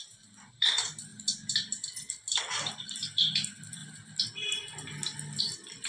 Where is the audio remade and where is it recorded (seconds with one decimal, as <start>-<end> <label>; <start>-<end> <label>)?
0.0-1.1 remade; 1.1-2.5 recorded; 2.5-3.8 remade; 3.8-5.4 recorded; 5.4-5.9 remade